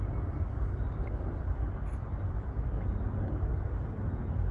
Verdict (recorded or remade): recorded